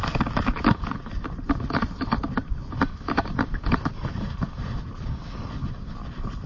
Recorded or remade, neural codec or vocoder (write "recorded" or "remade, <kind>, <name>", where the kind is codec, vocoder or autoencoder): recorded